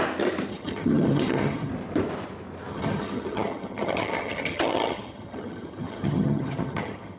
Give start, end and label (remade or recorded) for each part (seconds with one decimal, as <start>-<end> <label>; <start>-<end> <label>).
0.0-0.5 recorded; 0.5-1.7 remade; 1.7-2.7 recorded; 2.7-7.2 remade